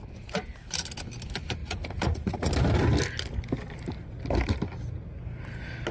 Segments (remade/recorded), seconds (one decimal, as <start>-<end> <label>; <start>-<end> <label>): 0.0-1.6 recorded; 1.6-2.5 remade; 2.5-5.9 recorded